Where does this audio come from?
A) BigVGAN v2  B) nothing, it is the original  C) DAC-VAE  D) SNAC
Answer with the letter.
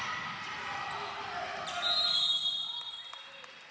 B